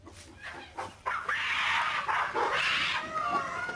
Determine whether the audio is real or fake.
real